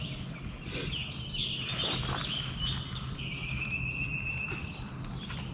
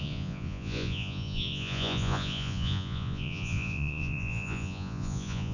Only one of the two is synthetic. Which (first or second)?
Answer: second